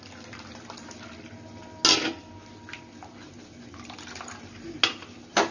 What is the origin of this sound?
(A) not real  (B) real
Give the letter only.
B